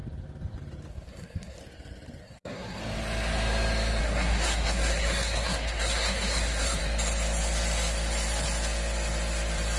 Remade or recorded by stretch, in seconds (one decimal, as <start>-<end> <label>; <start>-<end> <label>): 0.0-0.9 recorded; 0.9-1.6 remade; 1.6-2.2 recorded; 2.2-2.8 remade; 2.8-4.0 recorded; 4.0-6.8 remade; 6.8-9.8 recorded